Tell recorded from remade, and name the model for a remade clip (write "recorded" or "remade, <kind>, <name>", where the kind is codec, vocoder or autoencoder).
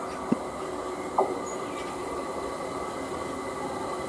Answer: recorded